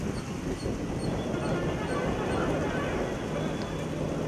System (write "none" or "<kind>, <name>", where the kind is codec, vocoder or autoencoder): none